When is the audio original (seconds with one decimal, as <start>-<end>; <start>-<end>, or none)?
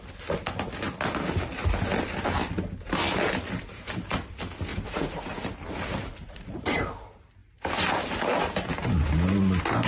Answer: 0.0-4.7; 5.4-6.0; 6.8-9.9